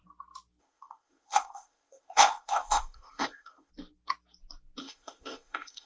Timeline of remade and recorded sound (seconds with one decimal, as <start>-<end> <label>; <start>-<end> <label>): 0.0-0.6 recorded; 0.6-3.7 remade; 3.7-4.8 recorded; 4.8-5.9 remade